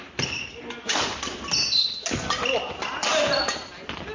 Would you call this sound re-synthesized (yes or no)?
no